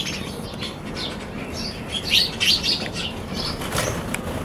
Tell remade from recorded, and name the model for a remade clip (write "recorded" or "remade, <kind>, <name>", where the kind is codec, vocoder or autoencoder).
recorded